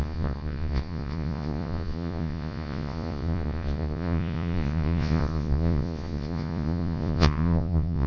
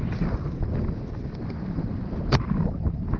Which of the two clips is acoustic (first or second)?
second